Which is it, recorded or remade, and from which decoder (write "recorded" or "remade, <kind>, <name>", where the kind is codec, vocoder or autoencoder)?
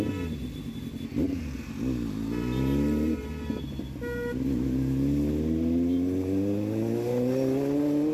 recorded